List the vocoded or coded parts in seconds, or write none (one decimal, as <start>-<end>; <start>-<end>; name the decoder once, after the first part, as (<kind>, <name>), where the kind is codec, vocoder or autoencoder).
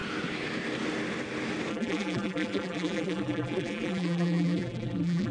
1.7-5.3 (vocoder, BigVGAN v2)